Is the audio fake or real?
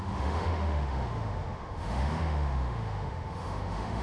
fake